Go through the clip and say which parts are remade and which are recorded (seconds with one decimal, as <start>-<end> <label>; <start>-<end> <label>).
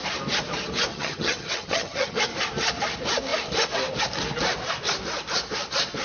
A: 0.0-0.9 recorded; 0.9-2.2 remade; 2.2-6.0 recorded